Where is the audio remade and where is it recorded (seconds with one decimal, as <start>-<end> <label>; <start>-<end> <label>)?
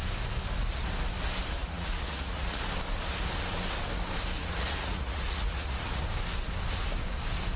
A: 0.0-1.6 recorded; 1.6-2.6 remade; 2.6-4.4 recorded; 4.4-6.0 remade; 6.0-7.6 recorded